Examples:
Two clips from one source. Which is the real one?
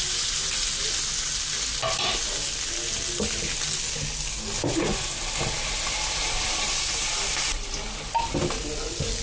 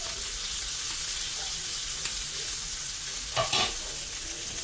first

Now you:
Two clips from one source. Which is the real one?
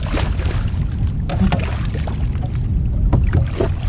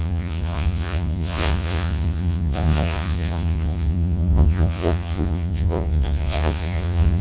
first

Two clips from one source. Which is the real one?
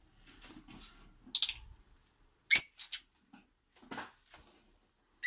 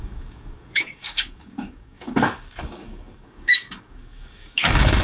first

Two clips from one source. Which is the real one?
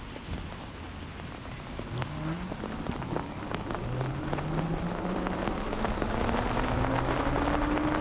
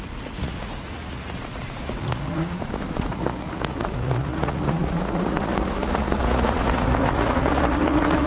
first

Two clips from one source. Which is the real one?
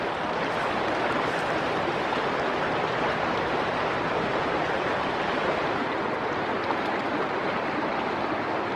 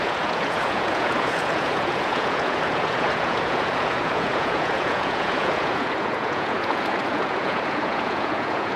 first